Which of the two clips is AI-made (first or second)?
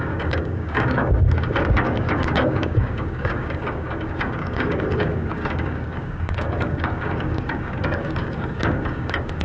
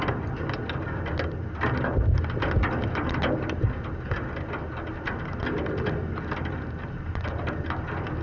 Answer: first